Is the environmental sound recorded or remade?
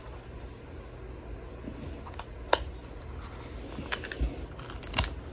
recorded